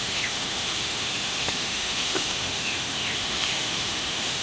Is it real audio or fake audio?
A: fake